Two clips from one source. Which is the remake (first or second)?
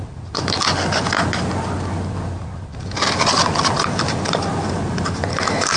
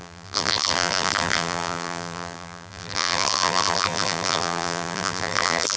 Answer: second